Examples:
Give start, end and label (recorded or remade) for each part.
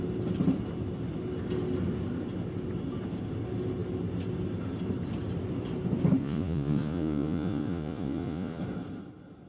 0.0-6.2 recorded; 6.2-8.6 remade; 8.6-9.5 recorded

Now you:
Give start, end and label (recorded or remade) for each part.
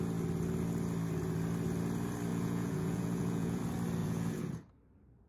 0.0-2.3 recorded; 2.3-3.6 remade; 3.6-4.0 recorded; 4.0-4.7 remade; 4.7-5.3 recorded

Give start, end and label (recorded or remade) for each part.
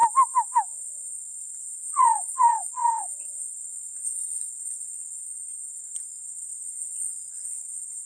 0.0-1.9 recorded; 1.9-5.2 remade; 5.2-5.7 recorded; 5.7-8.1 remade